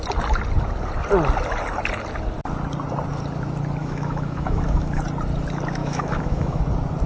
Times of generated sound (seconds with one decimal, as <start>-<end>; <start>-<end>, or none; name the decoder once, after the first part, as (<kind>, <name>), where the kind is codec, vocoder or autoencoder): 3.8-5.0 (autoencoder, DAC-VAE); 5.8-6.6